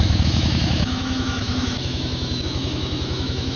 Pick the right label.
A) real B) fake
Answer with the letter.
B